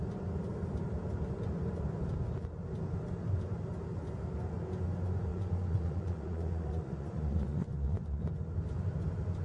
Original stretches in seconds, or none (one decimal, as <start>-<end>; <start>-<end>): 0.0-5.3; 8.2-9.4

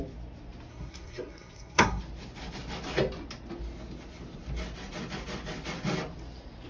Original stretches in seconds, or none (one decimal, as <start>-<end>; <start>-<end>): 0.0-0.7; 2.0-6.7

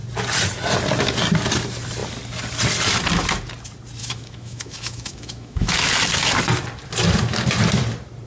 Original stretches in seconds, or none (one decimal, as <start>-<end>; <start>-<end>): 0.0-4.0; 5.9-8.3

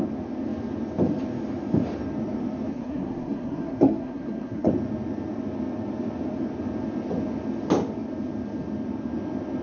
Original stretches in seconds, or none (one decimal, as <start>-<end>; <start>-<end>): 0.0-2.7; 4.7-9.6